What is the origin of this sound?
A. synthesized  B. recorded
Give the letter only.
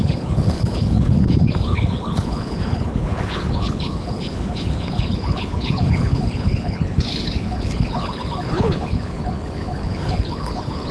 A